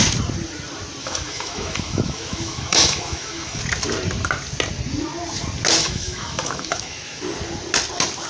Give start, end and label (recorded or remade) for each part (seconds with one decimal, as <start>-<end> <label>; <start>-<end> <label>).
0.0-1.0 recorded; 1.0-3.6 remade; 3.6-5.8 recorded; 5.8-7.2 remade; 7.2-8.3 recorded